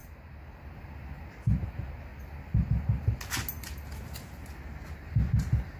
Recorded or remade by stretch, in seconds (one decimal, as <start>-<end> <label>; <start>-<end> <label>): 0.0-5.8 recorded